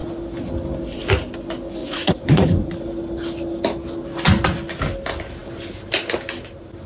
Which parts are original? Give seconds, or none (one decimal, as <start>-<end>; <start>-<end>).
0.0-1.8; 2.7-6.9